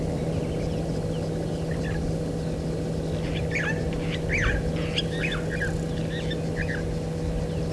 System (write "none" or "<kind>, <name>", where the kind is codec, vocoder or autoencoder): none